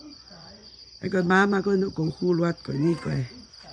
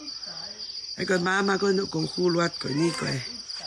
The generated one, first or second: first